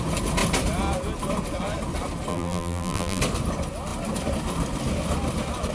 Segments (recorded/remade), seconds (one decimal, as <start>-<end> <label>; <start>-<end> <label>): 0.0-2.3 recorded; 2.3-3.2 remade; 3.2-5.7 recorded